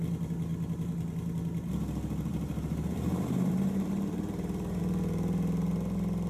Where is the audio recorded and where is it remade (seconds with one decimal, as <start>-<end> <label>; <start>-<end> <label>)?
0.0-2.3 recorded; 2.3-4.8 remade; 4.8-6.3 recorded